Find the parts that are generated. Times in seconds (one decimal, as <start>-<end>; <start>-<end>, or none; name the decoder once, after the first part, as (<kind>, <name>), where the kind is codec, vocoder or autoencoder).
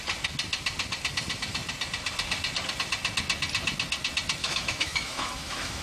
4.4-5.8 (autoencoder, DAC-VAE)